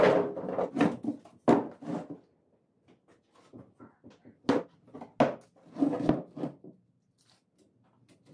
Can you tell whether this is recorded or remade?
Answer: recorded